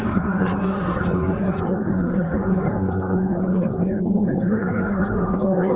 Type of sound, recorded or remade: remade